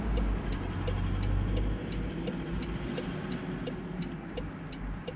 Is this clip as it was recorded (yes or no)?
yes